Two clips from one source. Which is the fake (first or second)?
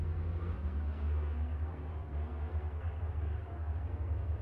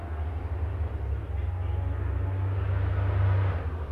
first